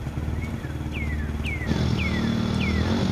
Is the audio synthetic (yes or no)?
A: no